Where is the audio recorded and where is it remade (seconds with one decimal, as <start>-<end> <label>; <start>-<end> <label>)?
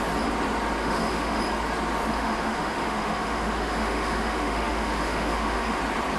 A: 0.0-0.8 recorded; 0.8-1.4 remade; 1.4-2.1 recorded; 2.1-5.8 remade; 5.8-6.2 recorded